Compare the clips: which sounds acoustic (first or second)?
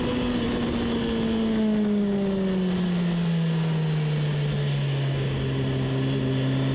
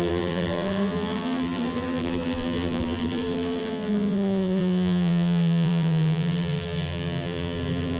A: first